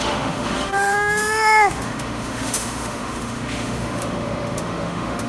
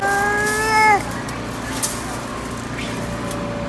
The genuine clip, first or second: second